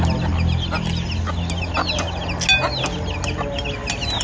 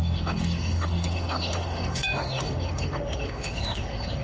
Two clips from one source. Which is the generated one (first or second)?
second